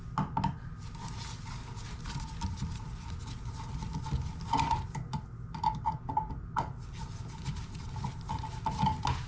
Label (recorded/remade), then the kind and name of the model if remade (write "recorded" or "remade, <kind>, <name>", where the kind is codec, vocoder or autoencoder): recorded